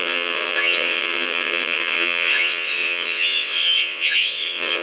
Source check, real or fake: fake